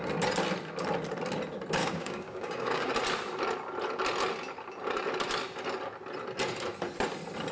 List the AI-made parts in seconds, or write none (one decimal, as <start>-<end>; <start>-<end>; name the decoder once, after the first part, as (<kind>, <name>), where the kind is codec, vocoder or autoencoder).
1.8-2.9 (codec, DAC)